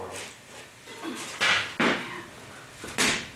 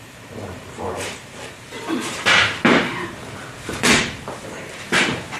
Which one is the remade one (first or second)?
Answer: second